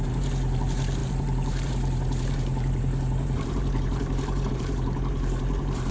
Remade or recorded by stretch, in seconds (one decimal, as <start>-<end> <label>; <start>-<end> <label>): 0.0-5.9 remade